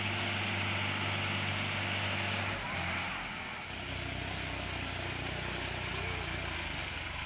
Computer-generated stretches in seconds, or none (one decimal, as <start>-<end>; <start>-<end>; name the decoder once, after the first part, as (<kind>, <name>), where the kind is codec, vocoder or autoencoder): none